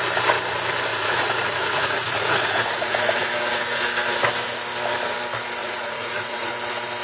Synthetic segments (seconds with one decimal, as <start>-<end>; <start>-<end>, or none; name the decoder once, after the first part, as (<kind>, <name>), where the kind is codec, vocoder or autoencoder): 0.9-3.3 (vocoder, Vocos); 5.6-6.5